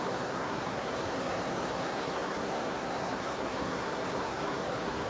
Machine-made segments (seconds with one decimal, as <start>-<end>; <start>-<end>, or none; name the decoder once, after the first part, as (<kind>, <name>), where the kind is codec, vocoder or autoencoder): 0.0-5.1 (codec, SNAC)